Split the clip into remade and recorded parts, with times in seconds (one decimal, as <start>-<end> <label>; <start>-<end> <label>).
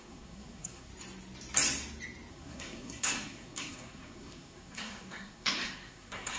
0.0-0.9 remade; 0.9-2.3 recorded; 2.3-6.4 remade